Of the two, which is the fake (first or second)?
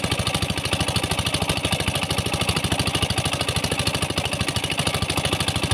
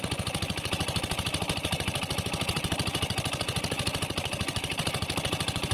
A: second